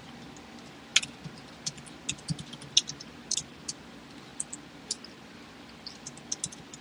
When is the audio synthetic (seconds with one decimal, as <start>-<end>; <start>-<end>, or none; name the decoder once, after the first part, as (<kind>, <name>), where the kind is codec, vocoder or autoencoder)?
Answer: none